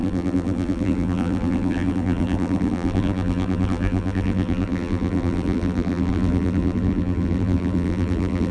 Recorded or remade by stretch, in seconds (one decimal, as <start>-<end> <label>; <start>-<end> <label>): 0.0-8.5 remade